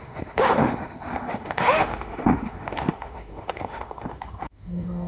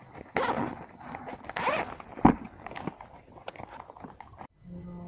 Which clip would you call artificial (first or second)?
first